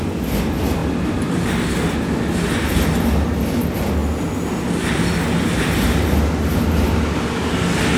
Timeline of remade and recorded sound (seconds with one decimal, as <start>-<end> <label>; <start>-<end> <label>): 0.0-8.0 recorded